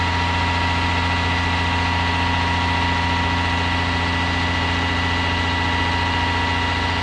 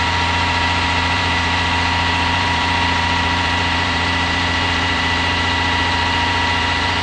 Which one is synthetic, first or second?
second